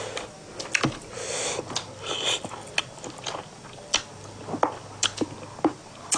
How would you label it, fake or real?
real